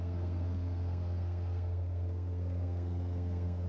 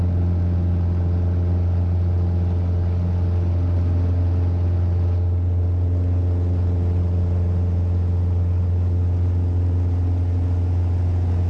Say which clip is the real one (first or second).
second